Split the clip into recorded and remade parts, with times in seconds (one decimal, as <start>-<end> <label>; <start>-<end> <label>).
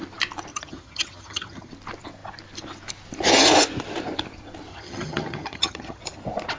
0.0-0.5 recorded; 0.5-1.7 remade; 1.7-4.7 recorded; 4.7-6.0 remade; 6.0-6.6 recorded